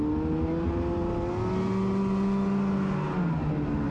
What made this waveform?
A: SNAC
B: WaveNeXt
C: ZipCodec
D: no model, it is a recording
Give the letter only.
D